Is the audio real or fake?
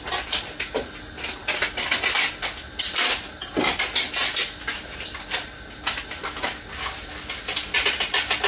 real